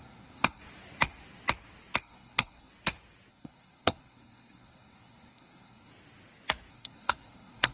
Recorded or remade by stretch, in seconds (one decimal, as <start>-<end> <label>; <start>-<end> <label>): 0.0-0.6 remade; 0.6-2.0 recorded; 2.0-2.7 remade; 2.7-3.3 recorded; 3.3-5.9 remade; 5.9-6.7 recorded; 6.7-7.7 remade